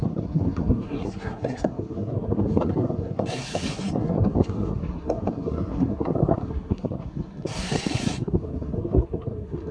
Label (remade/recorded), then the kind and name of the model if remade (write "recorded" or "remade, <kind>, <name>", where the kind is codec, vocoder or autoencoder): remade, codec, SNAC